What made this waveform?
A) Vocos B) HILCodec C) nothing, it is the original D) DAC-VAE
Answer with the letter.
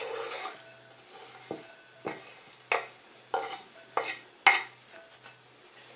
C